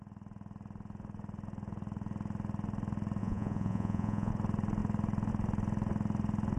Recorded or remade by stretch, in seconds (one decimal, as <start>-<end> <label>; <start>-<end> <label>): 0.0-3.2 recorded; 3.2-4.3 remade; 4.3-6.6 recorded